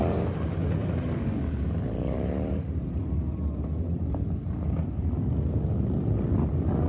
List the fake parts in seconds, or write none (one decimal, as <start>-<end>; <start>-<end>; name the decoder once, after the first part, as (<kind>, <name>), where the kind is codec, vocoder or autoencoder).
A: 0.0-4.1 (vocoder, BigVGAN v2)